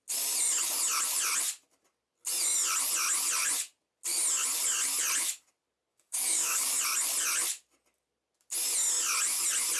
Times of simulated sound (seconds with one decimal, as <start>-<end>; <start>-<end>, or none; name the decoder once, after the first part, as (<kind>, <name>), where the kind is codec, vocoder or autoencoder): 5.9-6.8 (codec, DAC)